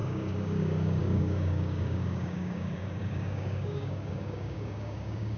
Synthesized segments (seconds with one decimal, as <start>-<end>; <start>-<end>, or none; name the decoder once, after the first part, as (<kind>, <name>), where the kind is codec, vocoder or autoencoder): 0.0-5.4 (codec, DAC)